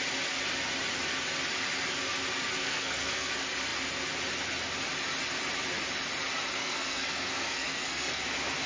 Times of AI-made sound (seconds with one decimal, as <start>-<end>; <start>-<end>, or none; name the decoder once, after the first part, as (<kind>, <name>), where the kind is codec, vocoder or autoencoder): 2.6-3.3 (codec, SNAC); 6.6-8.2